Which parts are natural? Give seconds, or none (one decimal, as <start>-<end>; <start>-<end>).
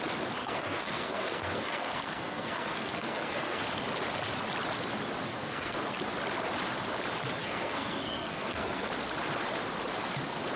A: 0.0-0.4; 3.6-5.3; 6.0-7.4; 8.9-10.6